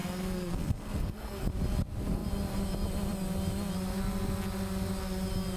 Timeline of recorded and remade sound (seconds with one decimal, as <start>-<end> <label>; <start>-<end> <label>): 0.0-1.5 remade; 1.5-5.6 recorded